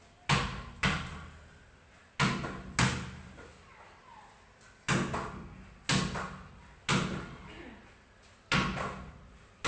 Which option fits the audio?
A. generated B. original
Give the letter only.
B